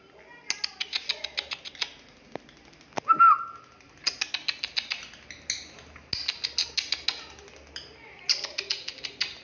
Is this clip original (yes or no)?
yes